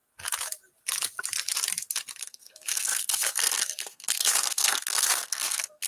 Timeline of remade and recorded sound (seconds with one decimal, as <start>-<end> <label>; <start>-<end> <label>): 0.0-2.2 recorded; 2.2-5.9 remade

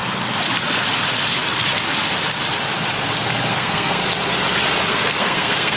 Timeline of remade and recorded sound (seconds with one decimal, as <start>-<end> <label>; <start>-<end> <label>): 0.0-3.5 recorded; 3.5-4.0 remade; 4.0-4.9 recorded; 4.9-5.8 remade

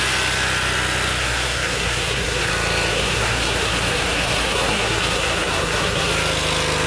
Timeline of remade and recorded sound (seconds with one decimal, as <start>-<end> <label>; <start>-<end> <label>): 0.0-1.2 recorded; 1.2-2.5 remade; 2.5-2.9 recorded; 2.9-6.1 remade; 6.1-6.9 recorded

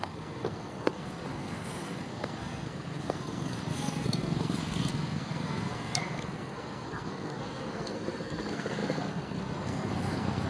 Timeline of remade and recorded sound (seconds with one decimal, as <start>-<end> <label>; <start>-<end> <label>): 0.0-10.5 remade

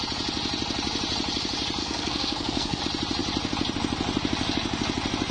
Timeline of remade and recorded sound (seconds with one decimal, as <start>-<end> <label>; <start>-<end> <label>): 0.0-1.8 recorded; 1.8-2.8 remade; 2.8-5.3 recorded

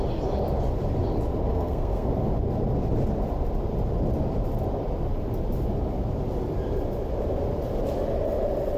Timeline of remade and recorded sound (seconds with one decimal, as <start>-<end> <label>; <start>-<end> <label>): 0.0-1.5 recorded; 1.5-2.1 remade; 2.1-8.8 recorded

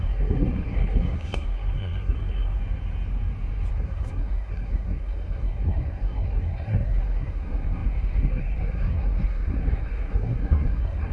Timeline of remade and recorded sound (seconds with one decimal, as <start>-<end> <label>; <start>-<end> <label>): 0.0-2.6 remade; 2.6-3.7 recorded; 3.7-11.1 remade

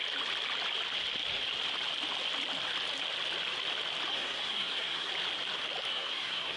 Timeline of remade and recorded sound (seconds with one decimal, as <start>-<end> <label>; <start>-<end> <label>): 0.0-4.1 recorded; 4.1-5.1 remade; 5.1-5.9 recorded; 5.9-6.6 remade